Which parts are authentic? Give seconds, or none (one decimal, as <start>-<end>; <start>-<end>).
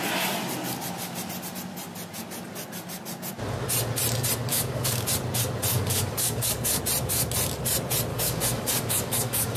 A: 0.0-4.5; 5.1-5.7; 6.8-8.1